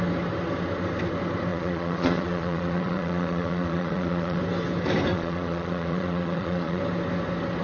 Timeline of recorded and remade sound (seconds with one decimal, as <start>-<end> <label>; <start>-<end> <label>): 0.0-1.5 recorded; 1.5-4.4 remade; 4.4-5.1 recorded; 5.1-6.8 remade; 6.8-7.6 recorded